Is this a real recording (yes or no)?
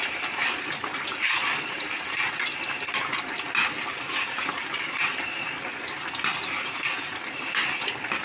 yes